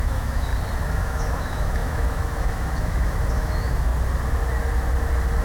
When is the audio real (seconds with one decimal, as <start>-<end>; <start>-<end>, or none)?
0.5-1.0; 3.9-5.4